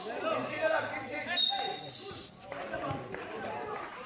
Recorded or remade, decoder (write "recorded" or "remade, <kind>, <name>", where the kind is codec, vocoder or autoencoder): recorded